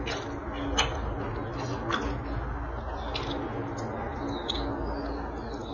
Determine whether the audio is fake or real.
real